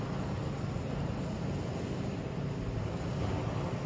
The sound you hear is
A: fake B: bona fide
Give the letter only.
B